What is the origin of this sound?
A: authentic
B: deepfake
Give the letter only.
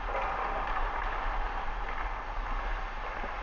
A